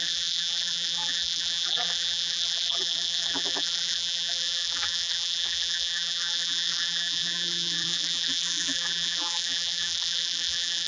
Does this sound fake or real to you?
fake